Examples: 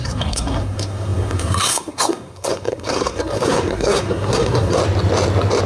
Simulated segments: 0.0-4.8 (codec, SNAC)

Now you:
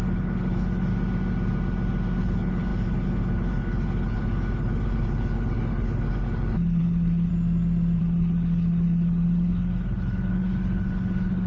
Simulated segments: 0.0-0.9 (codec, HILCodec); 2.2-7.3; 8.0-11.5

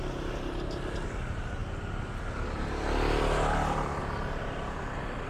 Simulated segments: 1.6-4.0 (vocoder, BigVGAN v2)

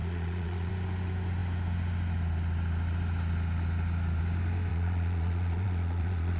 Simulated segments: 0.0-0.7 (vocoder, Vocos); 4.7-6.4

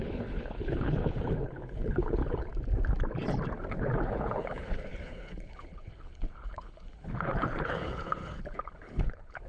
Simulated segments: 0.0-2.5 (codec, HILCodec); 3.7-9.5

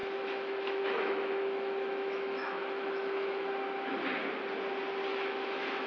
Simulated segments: 0.0-3.5 (autoencoder, DAC-VAE); 5.1-5.9

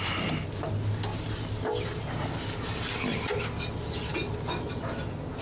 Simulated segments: none

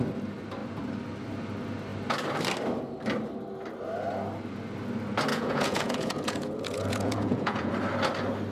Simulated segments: 5.3-7.7 (vocoder, Vocos)